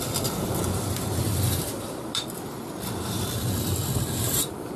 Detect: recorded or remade remade